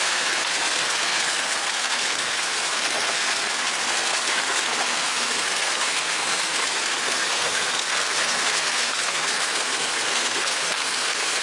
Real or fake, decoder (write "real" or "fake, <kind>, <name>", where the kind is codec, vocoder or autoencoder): fake, codec, SNAC